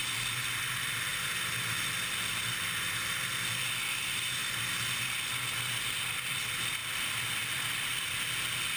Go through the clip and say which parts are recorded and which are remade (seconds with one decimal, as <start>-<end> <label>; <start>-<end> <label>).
0.0-1.1 recorded; 1.1-3.7 remade; 3.7-4.4 recorded; 4.4-6.2 remade; 6.2-6.8 recorded; 6.8-8.2 remade; 8.2-8.8 recorded